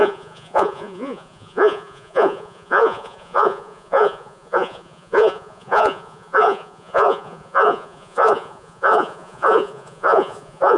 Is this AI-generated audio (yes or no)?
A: yes